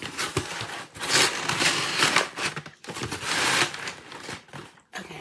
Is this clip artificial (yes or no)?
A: no